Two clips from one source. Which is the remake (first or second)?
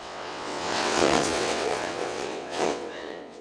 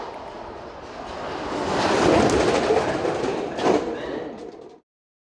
first